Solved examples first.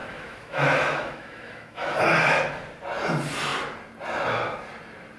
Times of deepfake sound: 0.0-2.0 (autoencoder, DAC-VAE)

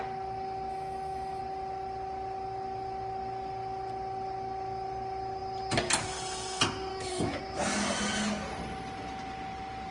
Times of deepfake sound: 0.7-1.4 (autoencoder, DAC-VAE); 6.9-7.4

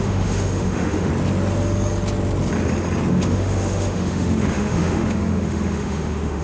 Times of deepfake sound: 0.0-1.1 (autoencoder, DAC-VAE); 3.1-6.4

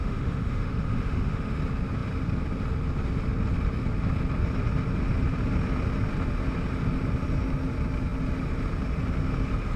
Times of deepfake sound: 0.0-1.5 (autoencoder, DAC-VAE)

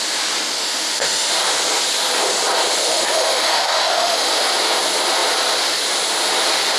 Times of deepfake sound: 0.6-1.3 (autoencoder, DAC-VAE); 2.8-4.3